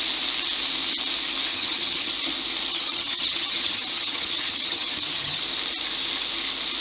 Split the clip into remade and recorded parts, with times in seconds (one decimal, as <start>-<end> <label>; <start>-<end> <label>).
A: 0.0-1.5 recorded; 1.5-2.1 remade; 2.1-2.7 recorded; 2.7-5.4 remade; 5.4-6.8 recorded